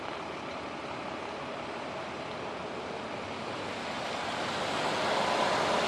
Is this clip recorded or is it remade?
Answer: recorded